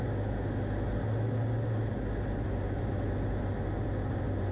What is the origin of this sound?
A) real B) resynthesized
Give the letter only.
A